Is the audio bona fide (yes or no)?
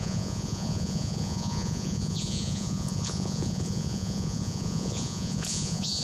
no